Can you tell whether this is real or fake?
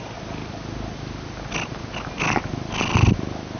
real